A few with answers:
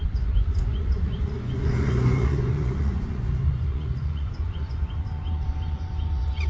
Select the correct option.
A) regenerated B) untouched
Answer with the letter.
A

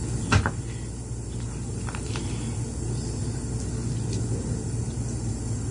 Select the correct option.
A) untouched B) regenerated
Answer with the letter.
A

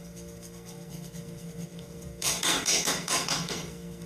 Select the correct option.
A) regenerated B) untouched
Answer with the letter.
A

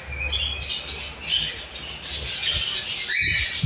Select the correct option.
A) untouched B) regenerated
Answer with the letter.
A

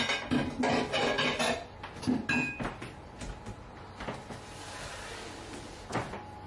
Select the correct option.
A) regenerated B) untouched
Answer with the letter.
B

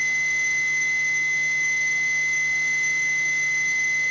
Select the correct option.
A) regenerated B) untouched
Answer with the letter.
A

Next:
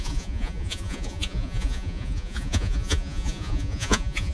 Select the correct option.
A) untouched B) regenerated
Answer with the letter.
B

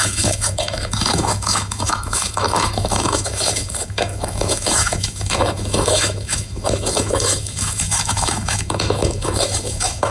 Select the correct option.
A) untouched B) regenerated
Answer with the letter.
B